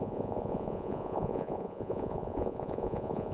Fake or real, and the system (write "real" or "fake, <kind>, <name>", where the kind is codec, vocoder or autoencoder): fake, vocoder, Vocos